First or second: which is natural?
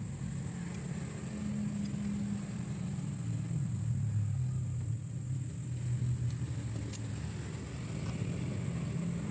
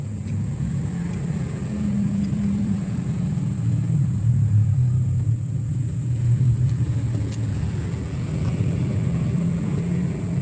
first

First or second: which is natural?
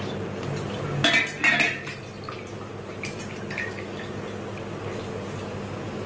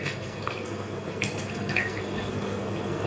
first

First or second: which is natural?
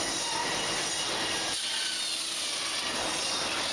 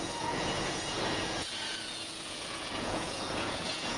first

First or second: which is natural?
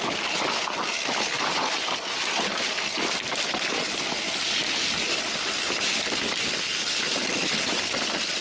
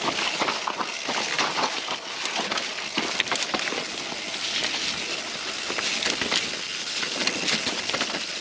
second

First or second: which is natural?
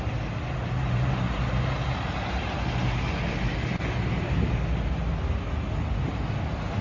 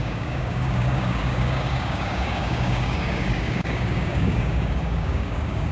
first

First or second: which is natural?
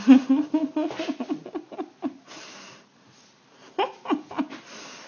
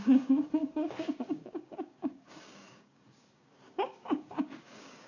first